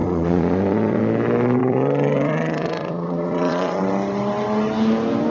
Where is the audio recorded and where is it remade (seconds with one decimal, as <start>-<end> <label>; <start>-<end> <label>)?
0.0-1.0 remade; 1.0-1.6 recorded; 1.6-3.8 remade; 3.8-5.3 recorded

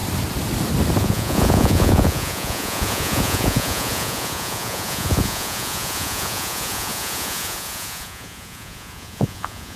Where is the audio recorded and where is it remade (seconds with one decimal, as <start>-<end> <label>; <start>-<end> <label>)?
0.0-1.0 recorded; 1.0-9.8 remade

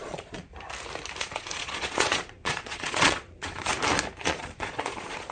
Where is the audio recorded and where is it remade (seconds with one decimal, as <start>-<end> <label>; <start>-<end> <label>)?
0.0-0.5 remade; 0.5-1.2 recorded; 1.2-3.7 remade; 3.7-4.2 recorded; 4.2-5.3 remade

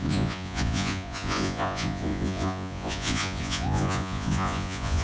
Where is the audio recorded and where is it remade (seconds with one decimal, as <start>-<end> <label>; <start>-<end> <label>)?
0.0-5.0 remade

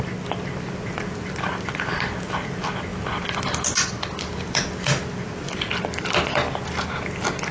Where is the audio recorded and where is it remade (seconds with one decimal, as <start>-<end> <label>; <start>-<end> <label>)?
0.0-7.5 recorded

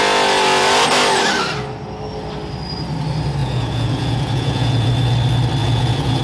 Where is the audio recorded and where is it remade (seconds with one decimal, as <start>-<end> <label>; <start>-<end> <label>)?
0.0-3.4 recorded; 3.4-4.9 remade; 4.9-5.6 recorded; 5.6-6.2 remade

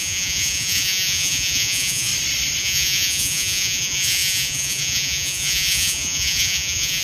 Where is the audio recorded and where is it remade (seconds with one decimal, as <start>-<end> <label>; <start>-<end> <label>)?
0.0-2.1 remade; 2.1-2.6 recorded; 2.6-7.0 remade